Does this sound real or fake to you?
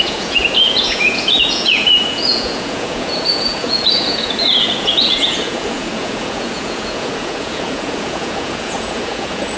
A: fake